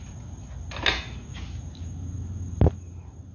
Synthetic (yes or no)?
no